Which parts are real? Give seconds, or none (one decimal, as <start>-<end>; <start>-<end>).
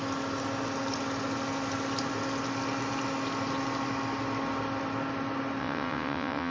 0.0-5.6